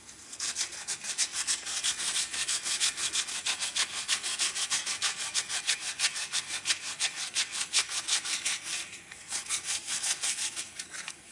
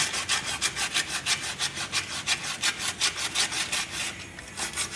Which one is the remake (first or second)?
first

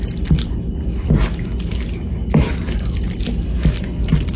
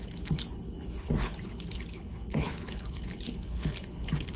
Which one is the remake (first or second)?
second